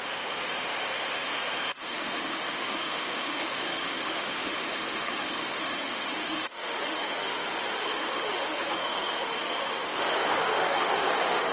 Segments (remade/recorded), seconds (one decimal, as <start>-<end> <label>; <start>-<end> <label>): 0.0-11.5 remade